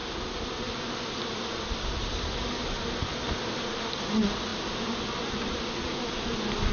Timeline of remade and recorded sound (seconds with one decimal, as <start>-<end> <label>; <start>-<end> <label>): 0.0-6.7 recorded